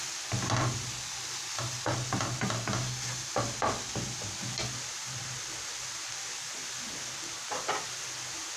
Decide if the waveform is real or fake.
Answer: real